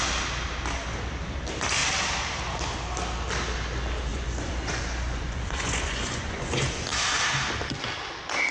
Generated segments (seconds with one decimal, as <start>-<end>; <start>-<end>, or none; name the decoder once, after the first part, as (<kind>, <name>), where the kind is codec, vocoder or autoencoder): 4.1-6.9 (vocoder, Vocos)